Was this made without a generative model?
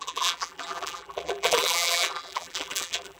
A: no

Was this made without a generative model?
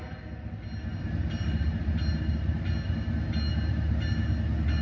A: yes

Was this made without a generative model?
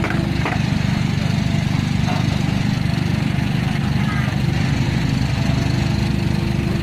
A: yes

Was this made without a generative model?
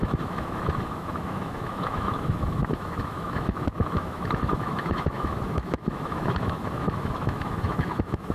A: no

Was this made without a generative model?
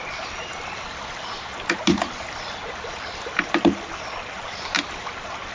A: yes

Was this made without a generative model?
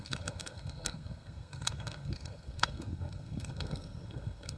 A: no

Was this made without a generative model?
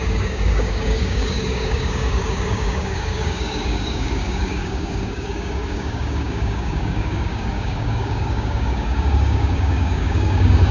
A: no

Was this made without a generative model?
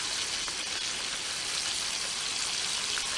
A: yes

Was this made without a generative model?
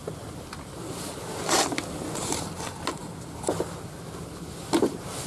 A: yes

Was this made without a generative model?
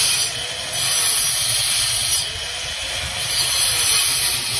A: yes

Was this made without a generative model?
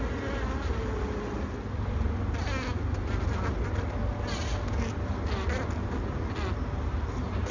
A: yes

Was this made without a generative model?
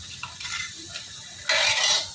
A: yes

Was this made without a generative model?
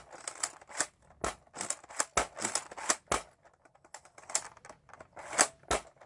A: yes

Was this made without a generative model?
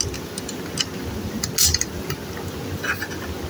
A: yes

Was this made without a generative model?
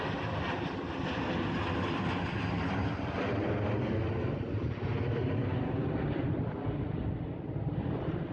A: yes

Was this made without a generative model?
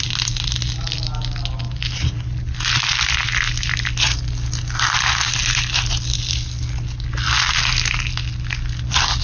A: yes